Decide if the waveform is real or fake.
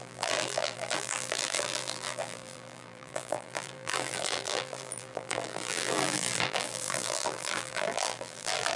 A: fake